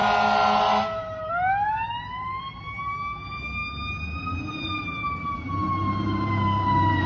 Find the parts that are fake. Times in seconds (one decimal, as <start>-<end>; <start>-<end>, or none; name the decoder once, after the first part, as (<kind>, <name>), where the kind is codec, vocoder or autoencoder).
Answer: 2.4-2.9 (vocoder, BigVGAN v2); 4.5-7.1